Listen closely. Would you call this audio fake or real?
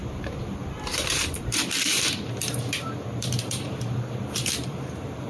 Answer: fake